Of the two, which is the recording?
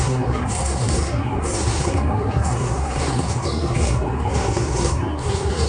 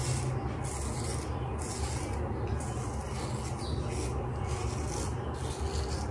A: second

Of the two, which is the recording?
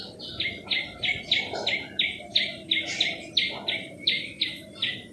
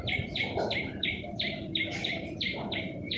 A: first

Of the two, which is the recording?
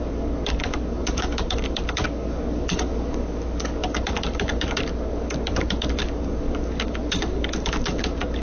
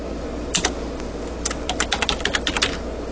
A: second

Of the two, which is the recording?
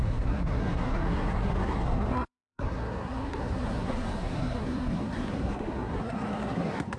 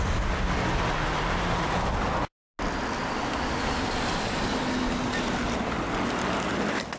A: second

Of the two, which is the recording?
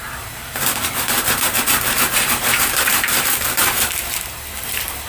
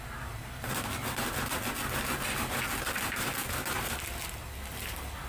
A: second